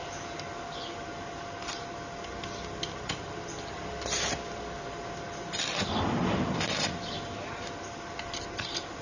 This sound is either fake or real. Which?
real